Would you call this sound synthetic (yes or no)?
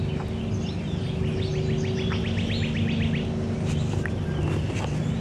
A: no